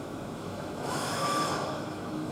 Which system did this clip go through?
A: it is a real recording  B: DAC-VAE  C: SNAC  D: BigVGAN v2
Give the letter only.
B